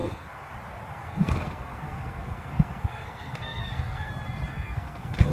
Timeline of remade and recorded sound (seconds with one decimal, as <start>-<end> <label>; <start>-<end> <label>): 0.0-0.5 remade; 0.5-0.9 recorded; 0.9-4.1 remade; 4.1-4.5 recorded; 4.5-5.3 remade